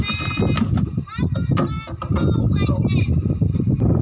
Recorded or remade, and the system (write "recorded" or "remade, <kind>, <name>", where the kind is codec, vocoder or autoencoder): recorded